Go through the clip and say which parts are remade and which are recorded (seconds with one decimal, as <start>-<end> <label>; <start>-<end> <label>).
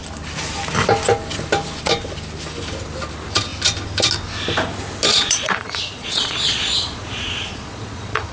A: 0.0-5.1 recorded; 5.1-8.3 remade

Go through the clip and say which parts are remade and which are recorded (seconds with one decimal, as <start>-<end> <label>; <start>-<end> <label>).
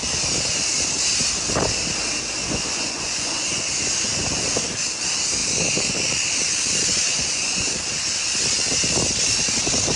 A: 0.0-2.4 recorded; 2.4-3.5 remade; 3.5-7.1 recorded; 7.1-7.8 remade; 7.8-10.0 recorded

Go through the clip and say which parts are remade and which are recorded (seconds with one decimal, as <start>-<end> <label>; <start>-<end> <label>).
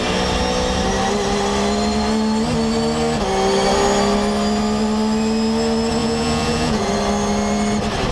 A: 0.0-6.0 recorded; 6.0-6.9 remade; 6.9-8.1 recorded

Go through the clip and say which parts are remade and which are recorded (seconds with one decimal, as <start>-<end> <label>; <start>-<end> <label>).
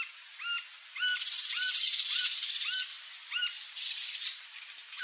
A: 0.0-5.0 recorded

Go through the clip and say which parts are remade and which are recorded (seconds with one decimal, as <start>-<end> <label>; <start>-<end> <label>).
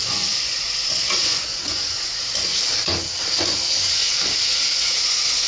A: 0.0-2.5 remade; 2.5-3.3 recorded; 3.3-4.1 remade; 4.1-4.7 recorded; 4.7-5.5 remade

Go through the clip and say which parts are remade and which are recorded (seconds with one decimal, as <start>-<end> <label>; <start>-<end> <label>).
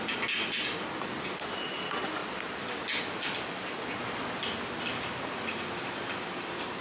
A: 0.0-6.8 recorded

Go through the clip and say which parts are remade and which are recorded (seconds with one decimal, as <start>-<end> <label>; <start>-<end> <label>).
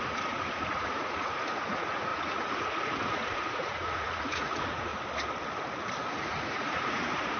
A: 0.0-4.9 remade; 4.9-6.0 recorded; 6.0-7.4 remade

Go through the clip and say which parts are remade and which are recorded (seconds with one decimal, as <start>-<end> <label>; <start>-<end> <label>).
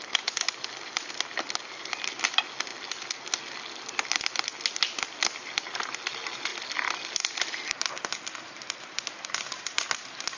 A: 0.0-10.4 recorded